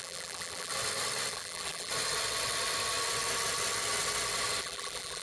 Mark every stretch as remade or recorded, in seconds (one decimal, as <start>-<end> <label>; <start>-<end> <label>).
0.0-0.7 remade; 0.7-1.3 recorded; 1.3-1.9 remade; 1.9-4.6 recorded; 4.6-5.2 remade